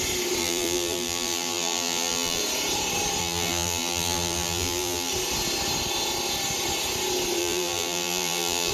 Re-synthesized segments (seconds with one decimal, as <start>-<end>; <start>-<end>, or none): 0.4-2.4; 3.2-5.1; 7.4-8.7

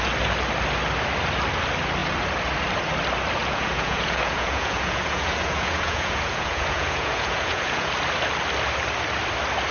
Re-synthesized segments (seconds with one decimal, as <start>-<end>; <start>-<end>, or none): 3.4-7.9

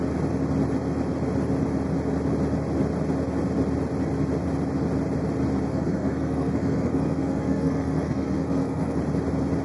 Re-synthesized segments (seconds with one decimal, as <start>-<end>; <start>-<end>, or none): 5.7-9.0

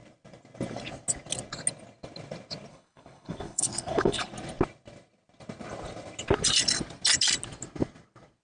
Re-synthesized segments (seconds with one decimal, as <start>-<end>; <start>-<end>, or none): 2.7-4.3

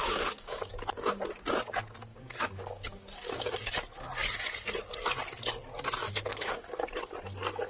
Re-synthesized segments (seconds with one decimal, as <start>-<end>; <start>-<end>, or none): 0.0-0.7; 2.1-3.7; 6.3-6.9

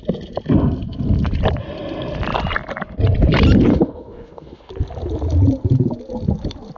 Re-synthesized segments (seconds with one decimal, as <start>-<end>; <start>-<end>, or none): 3.7-4.7

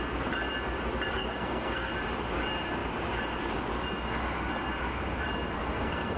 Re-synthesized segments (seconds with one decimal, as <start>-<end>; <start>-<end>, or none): 1.1-1.9; 5.6-6.2

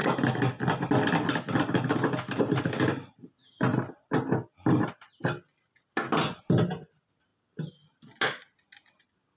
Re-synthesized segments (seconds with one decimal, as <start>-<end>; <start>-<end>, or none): none